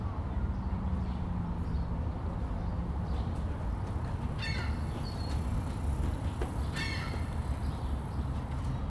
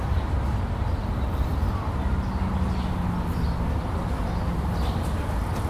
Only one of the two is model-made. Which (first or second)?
first